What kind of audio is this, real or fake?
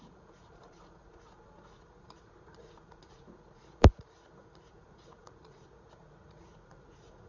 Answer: fake